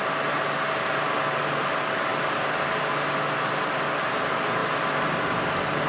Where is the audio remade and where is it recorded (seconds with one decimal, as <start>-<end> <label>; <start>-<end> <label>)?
0.0-5.9 recorded